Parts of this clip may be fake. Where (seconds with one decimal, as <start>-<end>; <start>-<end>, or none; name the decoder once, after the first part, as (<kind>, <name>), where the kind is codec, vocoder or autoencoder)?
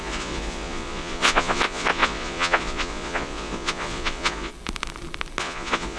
0.0-4.5 (vocoder, Vocos); 5.4-6.0